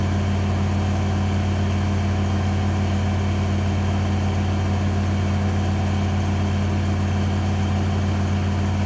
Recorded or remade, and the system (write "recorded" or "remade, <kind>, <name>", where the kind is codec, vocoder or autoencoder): recorded